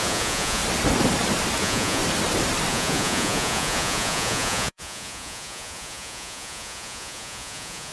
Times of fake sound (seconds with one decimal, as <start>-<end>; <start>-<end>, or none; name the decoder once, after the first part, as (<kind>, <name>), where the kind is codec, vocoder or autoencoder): 0.0-0.6 (vocoder, Vocos); 1.6-2.0; 2.7-7.9